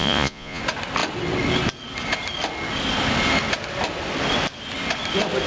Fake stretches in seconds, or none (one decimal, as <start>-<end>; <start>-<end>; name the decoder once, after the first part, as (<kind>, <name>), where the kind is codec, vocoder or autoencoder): 0.0-0.6 (vocoder, Vocos)